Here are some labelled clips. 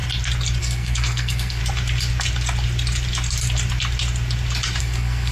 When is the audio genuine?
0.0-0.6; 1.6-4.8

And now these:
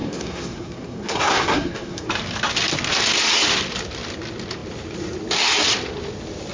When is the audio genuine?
2.1-6.5

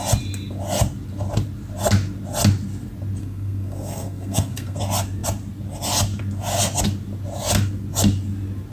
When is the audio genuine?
0.0-3.2; 4.8-8.7

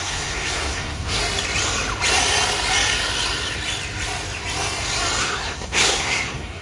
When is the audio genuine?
1.2-5.2

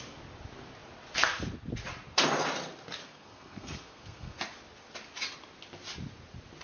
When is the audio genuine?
0.0-3.0; 4.4-6.6

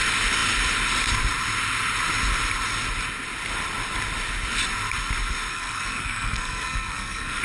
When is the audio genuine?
0.0-5.5

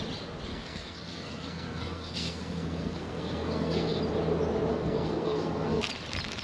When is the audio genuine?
0.0-0.5; 4.0-4.7; 5.9-6.4

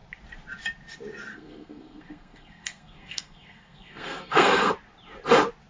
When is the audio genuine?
0.0-1.3; 4.7-5.7